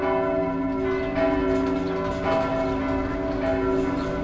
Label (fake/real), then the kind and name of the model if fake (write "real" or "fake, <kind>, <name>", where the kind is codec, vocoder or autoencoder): real